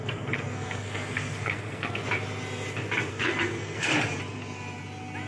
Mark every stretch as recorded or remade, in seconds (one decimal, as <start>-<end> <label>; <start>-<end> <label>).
0.0-2.0 remade; 2.0-3.1 recorded; 3.1-3.9 remade; 3.9-5.3 recorded